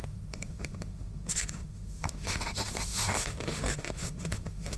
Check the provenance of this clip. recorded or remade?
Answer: remade